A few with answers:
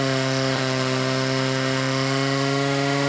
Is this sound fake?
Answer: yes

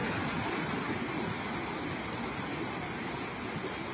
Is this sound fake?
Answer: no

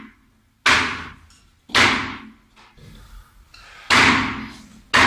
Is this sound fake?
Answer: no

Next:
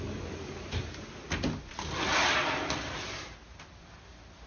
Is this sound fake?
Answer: no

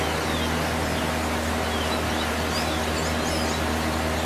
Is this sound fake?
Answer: no